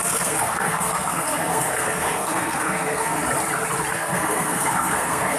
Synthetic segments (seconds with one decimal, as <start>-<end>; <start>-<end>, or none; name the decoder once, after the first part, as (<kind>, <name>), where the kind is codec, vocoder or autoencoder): 0.0-3.2 (codec, SNAC); 3.9-5.4